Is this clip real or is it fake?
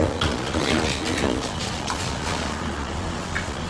fake